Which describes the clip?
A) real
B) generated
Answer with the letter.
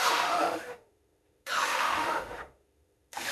B